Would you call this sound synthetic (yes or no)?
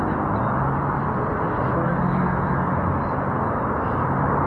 no